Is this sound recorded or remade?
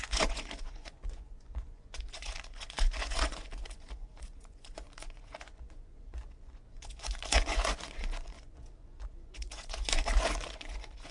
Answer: remade